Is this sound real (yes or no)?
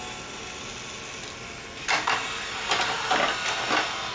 yes